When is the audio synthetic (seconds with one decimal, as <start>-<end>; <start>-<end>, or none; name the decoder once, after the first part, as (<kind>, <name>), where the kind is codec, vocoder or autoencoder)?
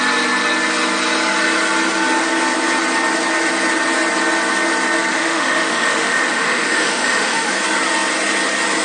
5.1-7.5 (autoencoder, DAC-VAE)